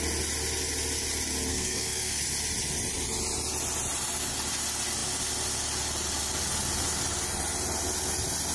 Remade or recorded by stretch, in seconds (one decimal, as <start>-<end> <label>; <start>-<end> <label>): 0.0-1.5 recorded; 1.5-2.2 remade; 2.2-8.5 recorded